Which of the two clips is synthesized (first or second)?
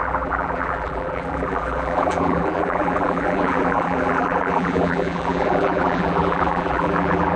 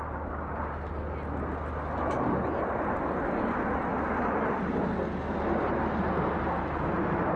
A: first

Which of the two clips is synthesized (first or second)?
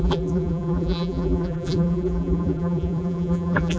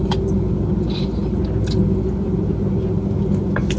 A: first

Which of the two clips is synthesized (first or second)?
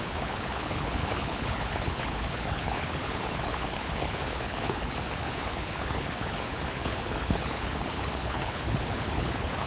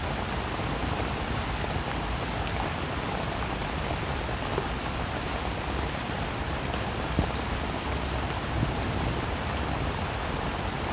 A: first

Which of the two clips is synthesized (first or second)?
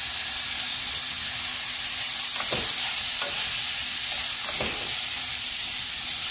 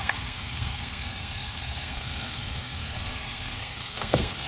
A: second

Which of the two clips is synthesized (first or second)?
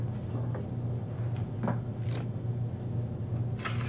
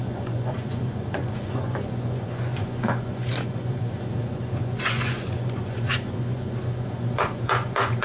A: second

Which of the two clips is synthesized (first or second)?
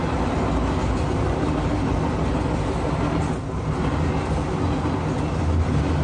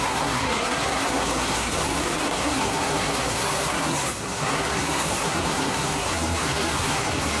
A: second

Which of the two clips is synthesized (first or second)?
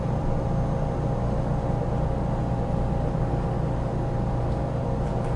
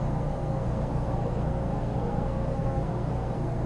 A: second